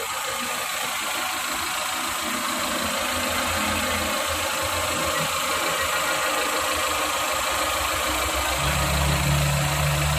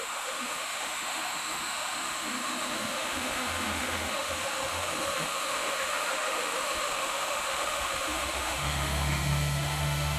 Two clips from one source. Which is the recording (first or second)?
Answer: first